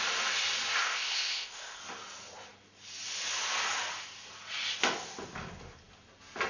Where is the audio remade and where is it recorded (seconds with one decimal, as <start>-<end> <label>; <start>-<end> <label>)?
0.0-0.8 recorded; 0.8-1.8 remade; 1.8-6.5 recorded